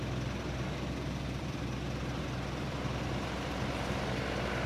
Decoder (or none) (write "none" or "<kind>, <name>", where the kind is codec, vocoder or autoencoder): vocoder, BigVGAN v2